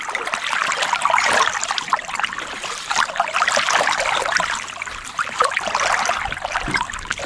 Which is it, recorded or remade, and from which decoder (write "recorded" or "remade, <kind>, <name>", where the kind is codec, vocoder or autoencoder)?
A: recorded